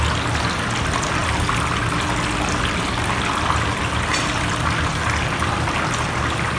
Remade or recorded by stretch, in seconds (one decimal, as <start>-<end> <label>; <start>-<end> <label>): 0.0-6.6 recorded